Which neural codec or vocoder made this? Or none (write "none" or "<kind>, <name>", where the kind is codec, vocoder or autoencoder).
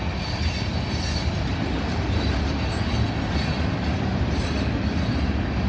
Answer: none